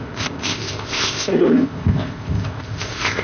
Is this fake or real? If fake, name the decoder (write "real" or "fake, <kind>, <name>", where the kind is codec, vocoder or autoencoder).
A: fake, codec, ZipCodec